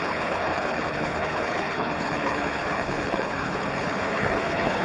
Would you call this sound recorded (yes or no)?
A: no